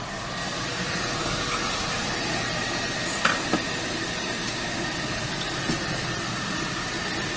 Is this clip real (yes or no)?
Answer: no